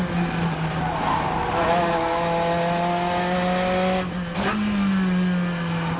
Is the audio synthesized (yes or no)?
no